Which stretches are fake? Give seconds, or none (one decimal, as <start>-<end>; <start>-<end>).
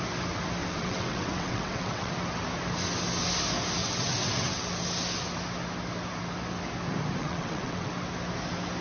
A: 0.6-2.1; 3.8-4.6; 7.2-7.9